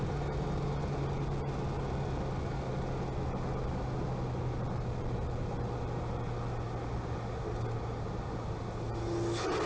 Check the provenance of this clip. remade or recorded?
recorded